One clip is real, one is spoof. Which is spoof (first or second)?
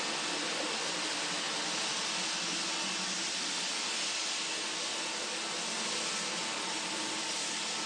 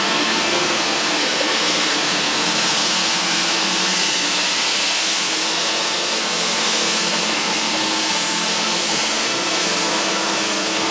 second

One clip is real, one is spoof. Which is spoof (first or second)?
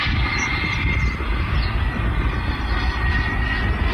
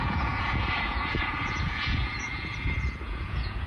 second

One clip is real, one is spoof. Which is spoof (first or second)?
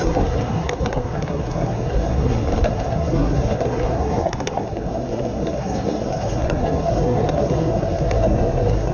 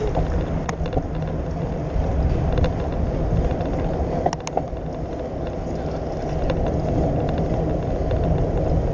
first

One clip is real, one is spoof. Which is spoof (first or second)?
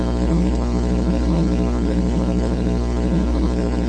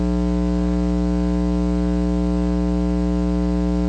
first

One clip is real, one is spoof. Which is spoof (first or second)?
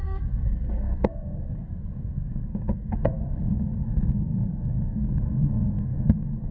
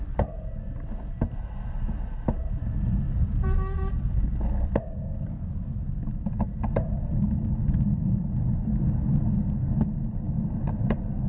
first